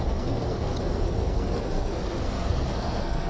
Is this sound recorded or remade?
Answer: remade